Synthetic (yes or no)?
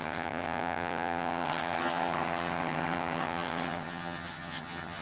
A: yes